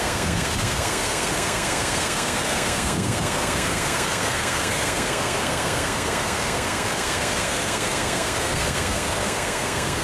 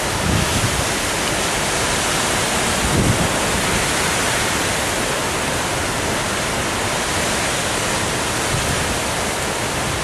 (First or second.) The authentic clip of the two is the second